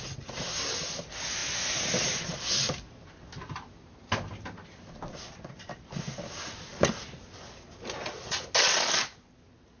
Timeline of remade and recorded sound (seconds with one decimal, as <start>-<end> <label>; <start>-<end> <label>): 0.0-9.8 recorded